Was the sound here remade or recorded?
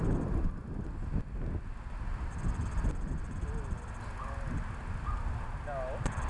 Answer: recorded